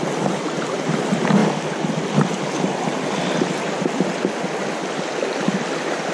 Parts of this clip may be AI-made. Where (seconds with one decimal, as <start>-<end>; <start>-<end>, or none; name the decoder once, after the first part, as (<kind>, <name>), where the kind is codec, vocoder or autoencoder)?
none